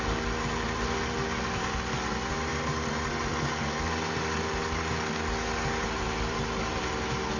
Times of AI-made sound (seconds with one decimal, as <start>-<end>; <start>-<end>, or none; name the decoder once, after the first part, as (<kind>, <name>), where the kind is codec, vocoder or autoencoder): 0.0-7.4 (vocoder, BigVGAN v2)